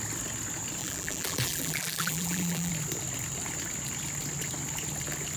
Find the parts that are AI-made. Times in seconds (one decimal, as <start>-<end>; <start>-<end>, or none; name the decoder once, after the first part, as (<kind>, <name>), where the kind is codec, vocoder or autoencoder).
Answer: 0.8-2.7 (vocoder, BigVGAN v2)